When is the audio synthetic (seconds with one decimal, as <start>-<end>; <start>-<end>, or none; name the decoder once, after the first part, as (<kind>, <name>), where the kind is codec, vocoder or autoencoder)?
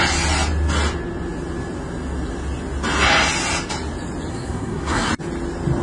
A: 4.3-5.1 (codec, SNAC)